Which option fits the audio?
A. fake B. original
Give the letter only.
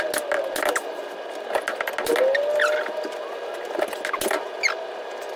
B